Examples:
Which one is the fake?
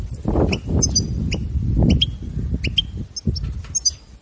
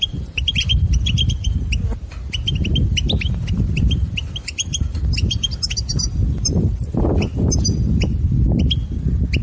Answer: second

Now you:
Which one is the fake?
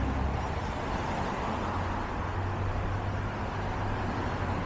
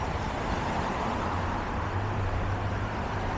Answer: second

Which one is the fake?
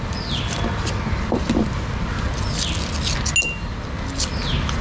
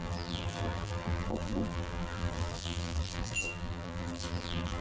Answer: second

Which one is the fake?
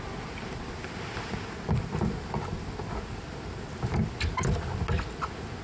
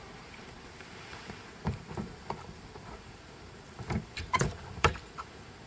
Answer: second